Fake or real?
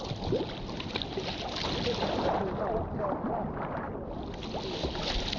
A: real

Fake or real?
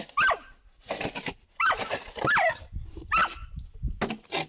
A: real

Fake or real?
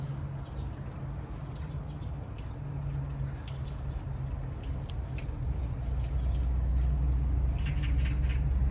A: real